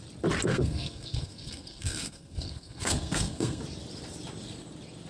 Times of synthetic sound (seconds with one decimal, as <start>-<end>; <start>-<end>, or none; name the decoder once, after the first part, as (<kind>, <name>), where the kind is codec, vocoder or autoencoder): 0.5-3.6 (codec, SNAC)